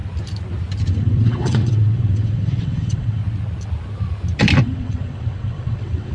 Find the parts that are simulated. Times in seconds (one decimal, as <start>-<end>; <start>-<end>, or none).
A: 0.9-3.2; 4.6-6.1